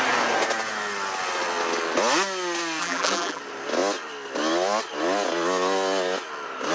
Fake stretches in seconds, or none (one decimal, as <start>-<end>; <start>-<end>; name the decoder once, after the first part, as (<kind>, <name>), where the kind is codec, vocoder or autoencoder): 2.8-3.4 (vocoder, BigVGAN v2)